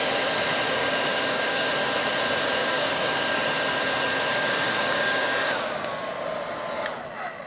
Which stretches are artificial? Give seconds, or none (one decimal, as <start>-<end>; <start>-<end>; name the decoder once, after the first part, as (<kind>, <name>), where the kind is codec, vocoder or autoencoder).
0.8-1.7 (codec, DAC); 2.6-3.4; 4.3-5.9